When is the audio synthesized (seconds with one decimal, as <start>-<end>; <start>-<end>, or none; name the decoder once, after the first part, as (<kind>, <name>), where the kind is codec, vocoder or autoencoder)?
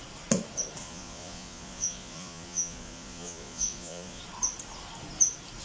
0.8-4.2 (vocoder, Vocos)